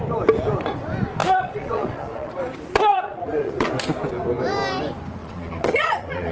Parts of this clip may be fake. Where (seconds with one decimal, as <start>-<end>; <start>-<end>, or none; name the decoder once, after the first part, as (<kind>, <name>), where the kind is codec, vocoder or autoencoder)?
1.2-2.4 (vocoder, Vocos); 2.9-3.7; 5.2-6.3